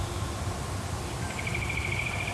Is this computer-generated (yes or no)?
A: no